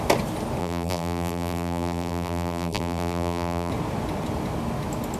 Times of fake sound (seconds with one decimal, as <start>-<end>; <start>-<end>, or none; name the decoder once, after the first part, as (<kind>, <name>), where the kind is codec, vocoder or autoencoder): 0.6-3.7 (vocoder, BigVGAN v2)